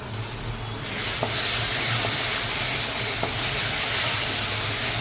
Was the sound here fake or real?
real